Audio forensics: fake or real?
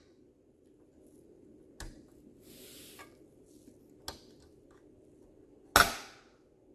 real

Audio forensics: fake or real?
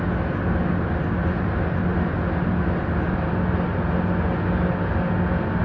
real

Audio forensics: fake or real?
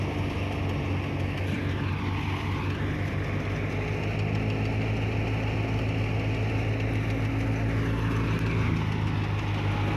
real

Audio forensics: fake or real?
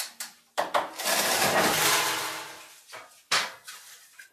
real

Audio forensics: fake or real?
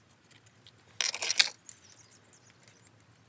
real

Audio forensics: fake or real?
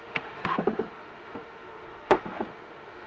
fake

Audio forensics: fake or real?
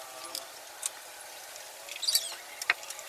real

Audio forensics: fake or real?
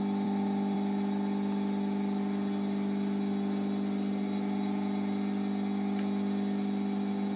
real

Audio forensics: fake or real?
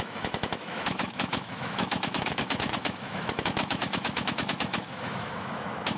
fake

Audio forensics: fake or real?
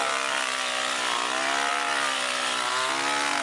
real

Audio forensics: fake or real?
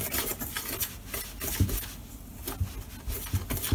real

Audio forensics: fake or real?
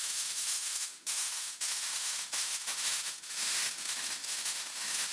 fake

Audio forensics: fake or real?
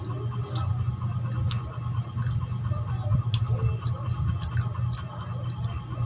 real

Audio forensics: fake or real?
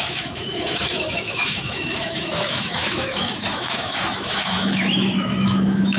fake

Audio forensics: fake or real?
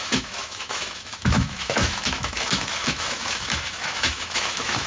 fake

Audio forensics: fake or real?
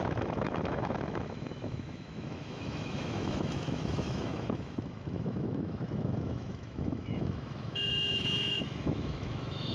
fake